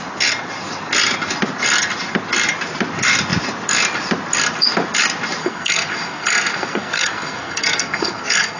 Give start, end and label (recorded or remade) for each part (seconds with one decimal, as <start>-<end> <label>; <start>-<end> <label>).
0.0-5.4 recorded; 5.4-8.6 remade